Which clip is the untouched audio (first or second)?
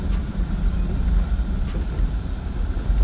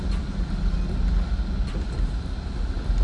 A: second